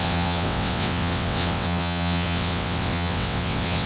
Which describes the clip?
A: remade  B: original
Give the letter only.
A